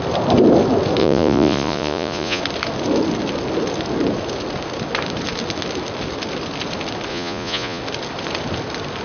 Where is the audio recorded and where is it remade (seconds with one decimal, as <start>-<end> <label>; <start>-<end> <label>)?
0.0-1.0 recorded; 1.0-2.4 remade; 2.4-7.1 recorded; 7.1-7.8 remade; 7.8-9.0 recorded